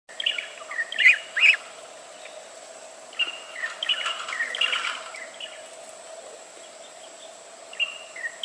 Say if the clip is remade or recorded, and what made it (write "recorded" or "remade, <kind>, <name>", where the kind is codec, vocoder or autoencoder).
recorded